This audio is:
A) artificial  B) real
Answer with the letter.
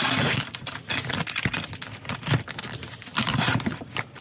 B